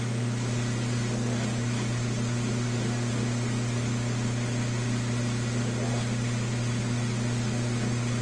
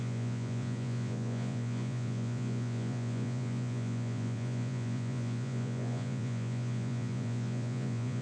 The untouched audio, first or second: first